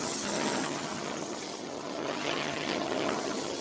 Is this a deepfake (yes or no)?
yes